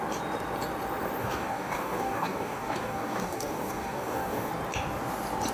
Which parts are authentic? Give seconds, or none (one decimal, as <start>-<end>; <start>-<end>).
0.0-1.2; 4.5-5.5